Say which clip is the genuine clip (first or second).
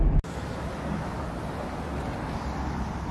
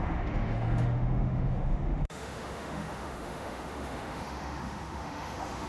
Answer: first